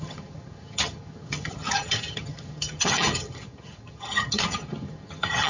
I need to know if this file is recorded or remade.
remade